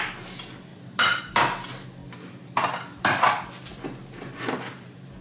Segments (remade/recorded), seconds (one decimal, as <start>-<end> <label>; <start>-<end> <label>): 0.0-5.2 recorded